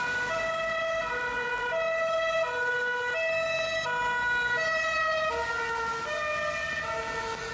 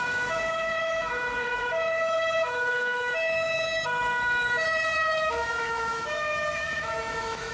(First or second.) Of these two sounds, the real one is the first